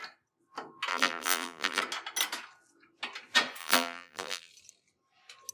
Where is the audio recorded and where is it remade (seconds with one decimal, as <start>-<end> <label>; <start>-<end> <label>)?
0.0-0.9 recorded; 0.9-1.8 remade; 1.8-3.6 recorded; 3.6-4.5 remade; 4.5-5.5 recorded